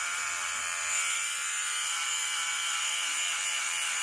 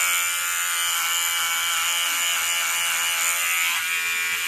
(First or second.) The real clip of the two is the second